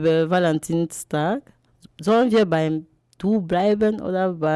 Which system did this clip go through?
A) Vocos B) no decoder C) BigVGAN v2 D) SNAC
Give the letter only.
B